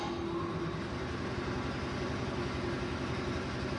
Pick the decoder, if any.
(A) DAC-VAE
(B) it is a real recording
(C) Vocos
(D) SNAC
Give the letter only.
B